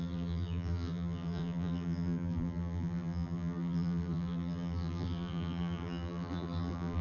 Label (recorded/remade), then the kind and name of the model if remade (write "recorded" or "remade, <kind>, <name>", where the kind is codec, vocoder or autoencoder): remade, vocoder, BigVGAN v2